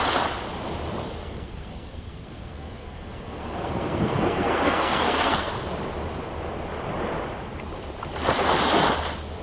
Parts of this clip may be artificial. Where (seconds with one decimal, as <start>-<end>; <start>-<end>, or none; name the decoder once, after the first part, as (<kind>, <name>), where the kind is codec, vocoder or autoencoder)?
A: 1.2-5.5 (codec, SNAC)